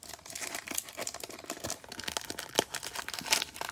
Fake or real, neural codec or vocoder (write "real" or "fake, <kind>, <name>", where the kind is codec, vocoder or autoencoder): real